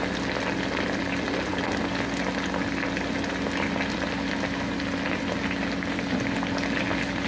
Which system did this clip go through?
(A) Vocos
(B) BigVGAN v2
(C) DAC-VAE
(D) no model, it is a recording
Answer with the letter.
D